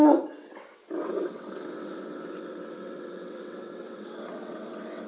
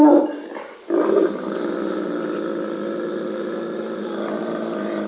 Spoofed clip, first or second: first